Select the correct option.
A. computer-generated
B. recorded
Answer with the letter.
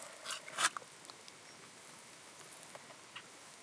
B